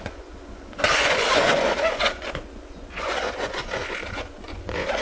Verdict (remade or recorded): remade